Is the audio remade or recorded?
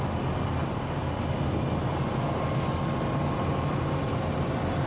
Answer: recorded